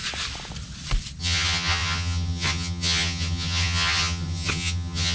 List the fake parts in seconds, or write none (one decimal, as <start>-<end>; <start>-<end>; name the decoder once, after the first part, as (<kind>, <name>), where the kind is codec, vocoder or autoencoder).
1.2-5.1 (vocoder, HiFi-GAN)

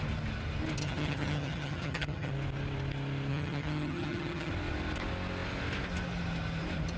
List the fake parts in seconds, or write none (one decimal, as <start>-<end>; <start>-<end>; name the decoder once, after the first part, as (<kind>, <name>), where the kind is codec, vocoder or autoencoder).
0.8-2.3 (vocoder, HiFi-GAN); 3.3-4.5

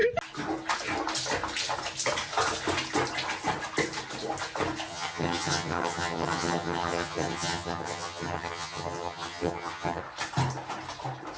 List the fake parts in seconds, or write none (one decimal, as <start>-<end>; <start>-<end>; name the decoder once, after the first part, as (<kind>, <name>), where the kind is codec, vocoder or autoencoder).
4.9-10.0 (vocoder, HiFi-GAN)

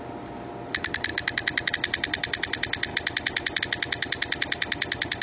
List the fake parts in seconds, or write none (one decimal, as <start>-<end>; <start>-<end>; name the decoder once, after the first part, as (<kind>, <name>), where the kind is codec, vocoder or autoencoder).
none

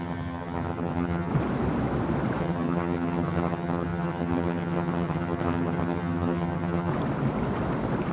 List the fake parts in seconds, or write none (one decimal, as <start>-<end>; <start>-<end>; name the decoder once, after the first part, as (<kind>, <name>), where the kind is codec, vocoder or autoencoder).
0.0-1.3 (vocoder, HiFi-GAN); 2.4-6.9

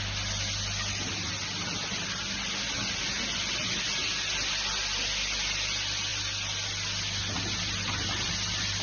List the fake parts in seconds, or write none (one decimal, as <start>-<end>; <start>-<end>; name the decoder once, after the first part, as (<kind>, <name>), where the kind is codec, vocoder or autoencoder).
none

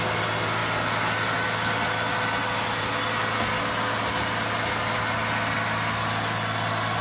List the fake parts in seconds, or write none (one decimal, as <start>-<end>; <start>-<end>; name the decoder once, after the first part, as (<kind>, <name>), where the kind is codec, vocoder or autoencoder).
none

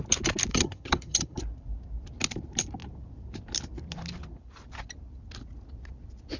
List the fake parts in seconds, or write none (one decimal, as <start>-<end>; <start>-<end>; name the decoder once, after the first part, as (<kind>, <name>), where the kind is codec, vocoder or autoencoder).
0.5-1.4 (vocoder, HiFi-GAN)